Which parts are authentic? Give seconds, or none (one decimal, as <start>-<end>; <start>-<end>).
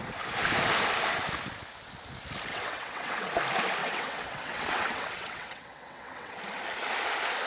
0.0-2.5; 3.3-3.8; 6.4-7.5